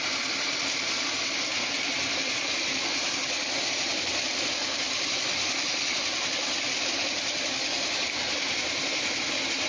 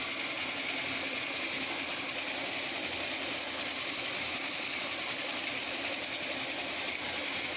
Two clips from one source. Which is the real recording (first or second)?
second